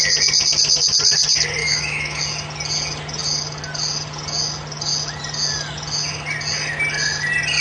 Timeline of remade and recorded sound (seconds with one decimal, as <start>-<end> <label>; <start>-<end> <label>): 0.0-1.6 recorded; 1.6-2.2 remade; 2.2-7.6 recorded

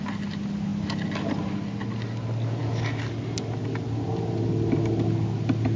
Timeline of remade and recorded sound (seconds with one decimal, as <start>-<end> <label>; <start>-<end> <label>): 0.0-5.8 recorded

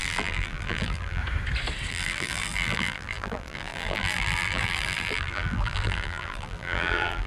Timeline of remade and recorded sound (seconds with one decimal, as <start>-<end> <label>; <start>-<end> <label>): 0.0-1.2 remade; 1.2-1.9 recorded; 1.9-7.3 remade